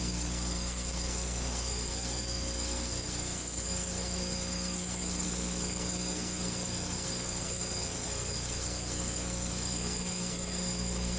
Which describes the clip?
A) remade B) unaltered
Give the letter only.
A